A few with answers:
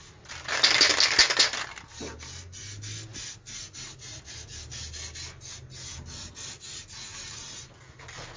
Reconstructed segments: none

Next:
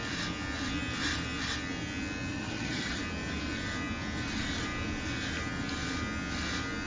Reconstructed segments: 2.3-3.0 (vocoder, HiFi-GAN)

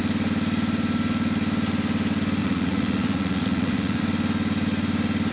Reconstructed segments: 2.4-4.0 (vocoder, Vocos)

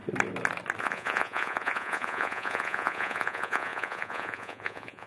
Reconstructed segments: 0.8-5.1 (vocoder, Vocos)

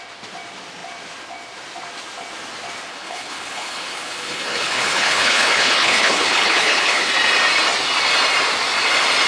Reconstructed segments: 2.9-7.1 (codec, HILCodec)

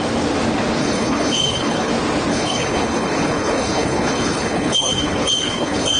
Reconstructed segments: 0.8-1.9 (codec, HILCodec); 2.3-6.0

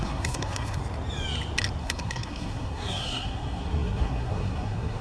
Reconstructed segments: 0.0-0.8 (codec, SNAC); 1.8-5.0